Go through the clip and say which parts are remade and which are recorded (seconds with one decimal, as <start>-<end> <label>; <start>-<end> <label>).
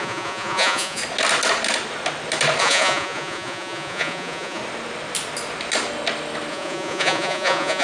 0.0-1.0 remade; 1.0-2.6 recorded; 2.6-4.6 remade; 4.6-6.5 recorded; 6.5-7.8 remade